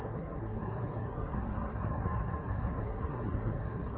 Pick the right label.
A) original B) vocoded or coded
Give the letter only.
B